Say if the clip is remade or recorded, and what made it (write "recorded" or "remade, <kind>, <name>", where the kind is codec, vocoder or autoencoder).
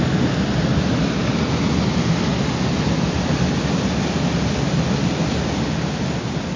recorded